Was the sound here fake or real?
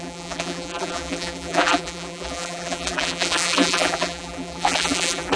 fake